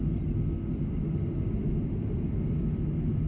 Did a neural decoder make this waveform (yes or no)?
no